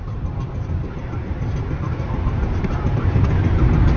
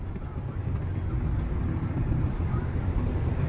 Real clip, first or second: second